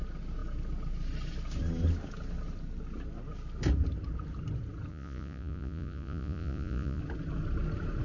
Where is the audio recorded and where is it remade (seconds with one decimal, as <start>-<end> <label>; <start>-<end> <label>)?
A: 0.0-4.9 recorded; 4.9-7.0 remade; 7.0-8.0 recorded